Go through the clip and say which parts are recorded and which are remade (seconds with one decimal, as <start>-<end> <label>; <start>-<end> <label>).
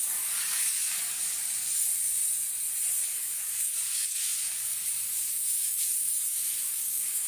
0.0-1.9 remade; 1.9-3.0 recorded; 3.0-7.3 remade